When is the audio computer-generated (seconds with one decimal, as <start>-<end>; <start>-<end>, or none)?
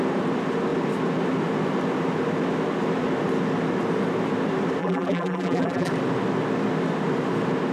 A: 4.8-5.9